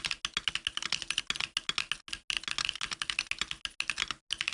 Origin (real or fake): real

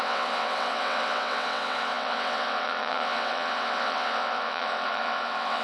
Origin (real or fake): fake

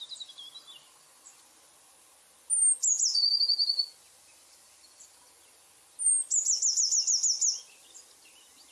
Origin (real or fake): real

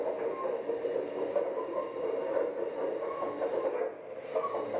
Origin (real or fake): real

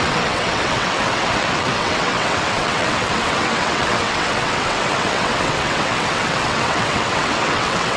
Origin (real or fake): fake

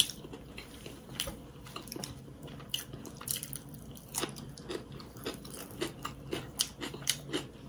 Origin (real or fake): fake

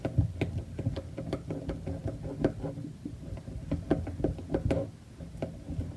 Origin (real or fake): real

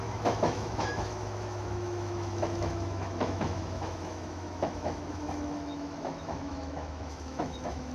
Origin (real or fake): fake